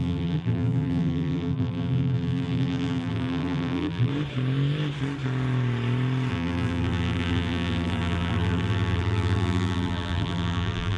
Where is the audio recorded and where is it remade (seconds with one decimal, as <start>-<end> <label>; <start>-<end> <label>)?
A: 0.0-4.1 remade; 4.1-6.3 recorded; 6.3-11.0 remade